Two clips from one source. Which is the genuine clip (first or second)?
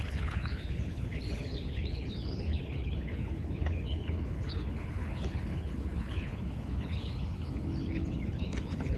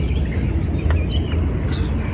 second